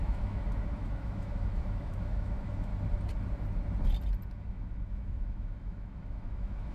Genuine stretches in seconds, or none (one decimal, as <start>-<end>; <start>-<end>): 2.7-4.5